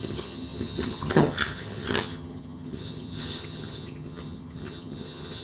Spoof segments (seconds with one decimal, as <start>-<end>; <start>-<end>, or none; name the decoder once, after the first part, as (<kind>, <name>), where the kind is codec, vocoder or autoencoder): 0.0-5.4 (vocoder, HiFi-GAN)